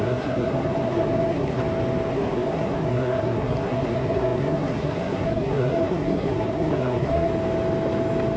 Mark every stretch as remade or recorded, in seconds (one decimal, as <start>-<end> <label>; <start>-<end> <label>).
0.0-1.6 remade; 1.6-2.1 recorded; 2.1-7.3 remade; 7.3-8.4 recorded